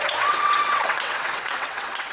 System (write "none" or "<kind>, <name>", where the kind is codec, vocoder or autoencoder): vocoder, WaveNeXt